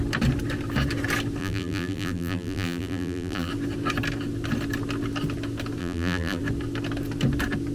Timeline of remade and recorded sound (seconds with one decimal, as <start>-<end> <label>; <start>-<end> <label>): 0.0-1.4 recorded; 1.4-3.5 remade; 3.5-5.8 recorded; 5.8-6.4 remade; 6.4-7.7 recorded